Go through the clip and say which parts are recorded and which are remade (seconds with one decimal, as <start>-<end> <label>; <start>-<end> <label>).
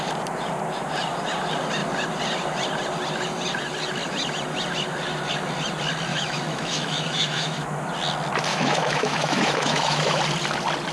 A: 0.0-6.1 recorded; 6.1-7.9 remade; 7.9-8.5 recorded; 8.5-10.2 remade; 10.2-10.9 recorded